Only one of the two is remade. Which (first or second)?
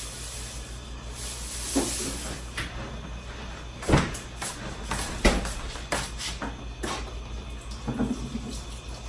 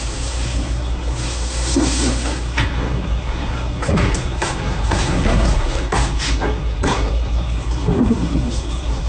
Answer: second